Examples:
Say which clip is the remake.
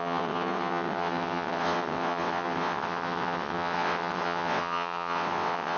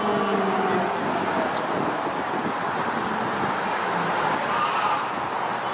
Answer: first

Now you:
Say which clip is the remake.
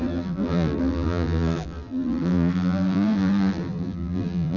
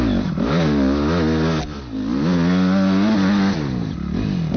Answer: first